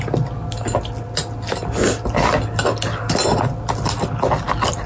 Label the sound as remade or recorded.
recorded